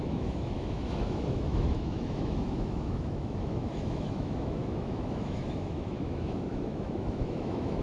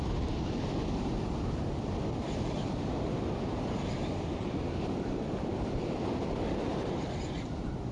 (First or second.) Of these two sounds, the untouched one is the second